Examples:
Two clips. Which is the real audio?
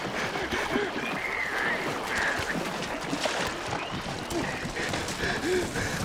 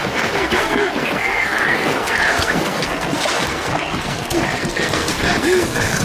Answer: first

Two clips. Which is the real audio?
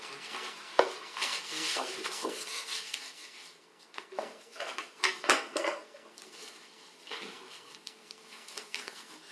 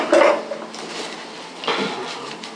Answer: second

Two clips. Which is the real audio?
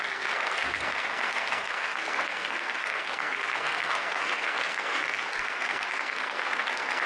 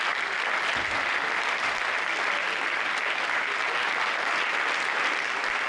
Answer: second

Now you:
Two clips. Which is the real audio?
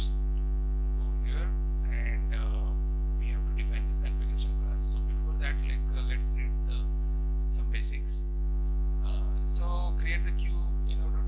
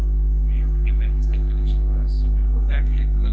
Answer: first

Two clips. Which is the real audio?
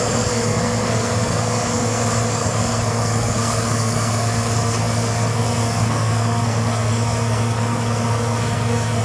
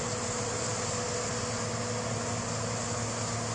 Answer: second